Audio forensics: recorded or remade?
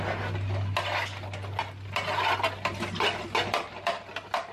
recorded